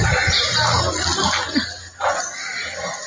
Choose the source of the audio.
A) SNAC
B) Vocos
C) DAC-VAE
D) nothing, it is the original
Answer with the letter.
D